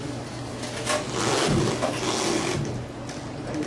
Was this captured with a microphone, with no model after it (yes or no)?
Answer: yes